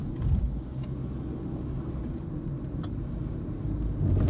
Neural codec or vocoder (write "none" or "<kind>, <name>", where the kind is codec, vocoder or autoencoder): none